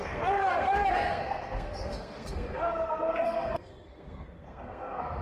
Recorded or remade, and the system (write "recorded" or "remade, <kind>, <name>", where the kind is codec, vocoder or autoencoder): remade, codec, SNAC